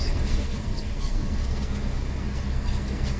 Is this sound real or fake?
fake